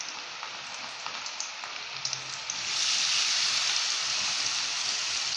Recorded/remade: remade